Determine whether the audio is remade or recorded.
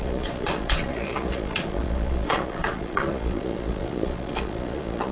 remade